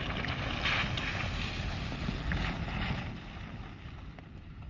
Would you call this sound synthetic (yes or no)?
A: no